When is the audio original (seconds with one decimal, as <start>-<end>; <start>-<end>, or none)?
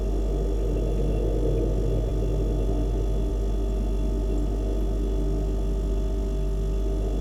0.0-7.2